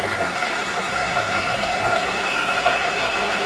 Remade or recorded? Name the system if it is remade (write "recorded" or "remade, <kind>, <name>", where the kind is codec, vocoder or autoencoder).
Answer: remade, codec, SNAC